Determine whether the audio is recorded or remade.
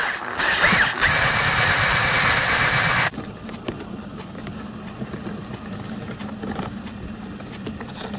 recorded